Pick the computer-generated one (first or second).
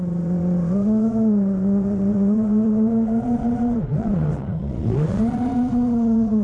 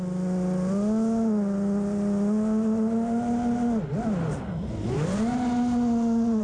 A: first